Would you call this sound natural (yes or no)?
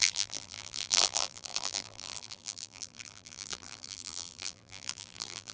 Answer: no